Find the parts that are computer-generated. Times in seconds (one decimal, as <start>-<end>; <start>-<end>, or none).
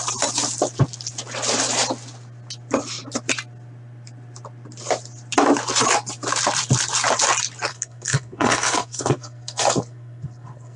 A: 7.7-10.8